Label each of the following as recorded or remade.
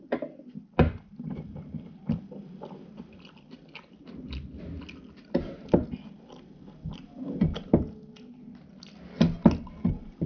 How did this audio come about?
recorded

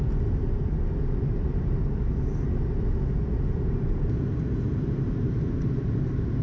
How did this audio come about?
recorded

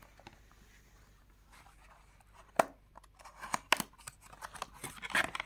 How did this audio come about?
recorded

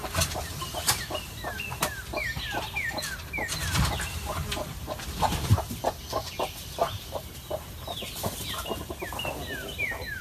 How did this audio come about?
recorded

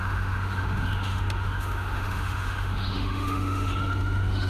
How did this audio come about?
remade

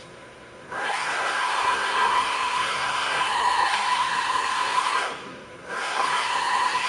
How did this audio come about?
remade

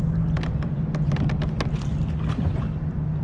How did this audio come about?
recorded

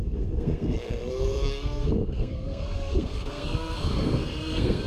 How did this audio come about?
remade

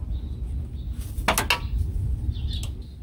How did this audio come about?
recorded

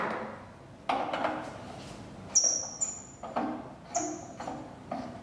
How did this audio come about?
recorded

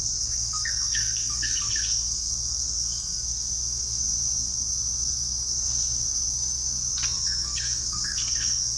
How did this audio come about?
remade